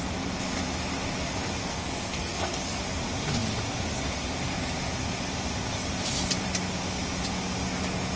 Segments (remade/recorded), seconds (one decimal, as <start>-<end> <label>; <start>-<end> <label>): 0.0-1.6 recorded; 1.6-2.8 remade; 2.8-8.2 recorded